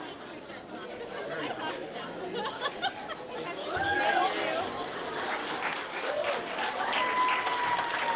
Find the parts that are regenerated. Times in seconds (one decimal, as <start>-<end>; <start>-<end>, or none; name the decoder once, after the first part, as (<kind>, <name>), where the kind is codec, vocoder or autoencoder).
5.4-6.1 (codec, DAC)